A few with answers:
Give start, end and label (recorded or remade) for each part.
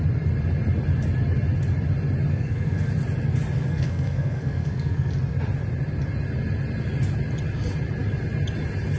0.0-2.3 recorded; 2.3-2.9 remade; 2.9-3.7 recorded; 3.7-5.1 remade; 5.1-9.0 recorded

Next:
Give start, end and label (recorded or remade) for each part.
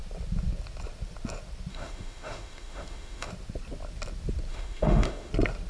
0.0-1.7 recorded; 1.7-3.3 remade; 3.3-4.5 recorded; 4.5-5.3 remade; 5.3-5.7 recorded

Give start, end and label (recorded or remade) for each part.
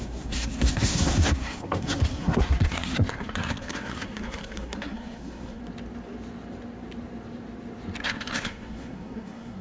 0.0-5.6 remade; 5.6-8.0 recorded; 8.0-9.6 remade